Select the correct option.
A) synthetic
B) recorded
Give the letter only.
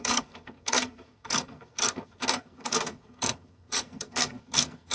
A